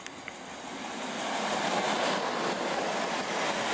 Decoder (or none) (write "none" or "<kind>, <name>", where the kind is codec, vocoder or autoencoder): none